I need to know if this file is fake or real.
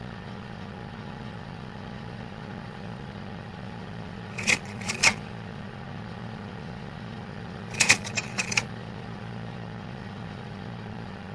fake